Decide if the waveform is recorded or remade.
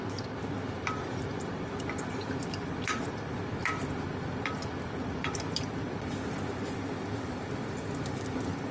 remade